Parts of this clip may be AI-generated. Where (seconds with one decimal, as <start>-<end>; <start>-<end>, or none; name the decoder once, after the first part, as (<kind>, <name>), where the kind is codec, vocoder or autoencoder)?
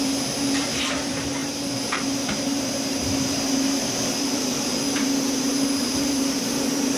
0.0-7.0 (vocoder, BigVGAN v2)